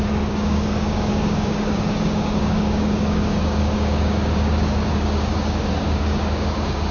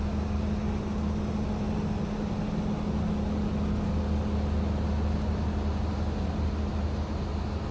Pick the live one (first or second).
second